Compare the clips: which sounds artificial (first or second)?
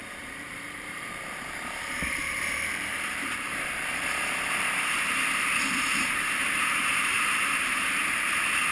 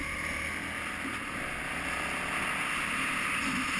first